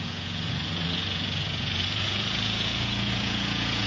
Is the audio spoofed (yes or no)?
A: yes